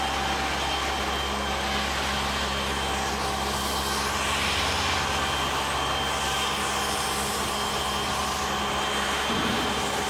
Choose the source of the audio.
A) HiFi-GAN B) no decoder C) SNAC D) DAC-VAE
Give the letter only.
B